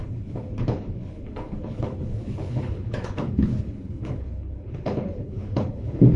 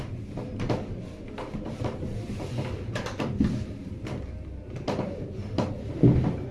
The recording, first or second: second